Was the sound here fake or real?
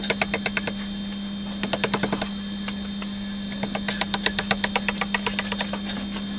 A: real